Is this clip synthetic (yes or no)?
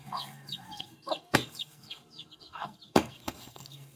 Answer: yes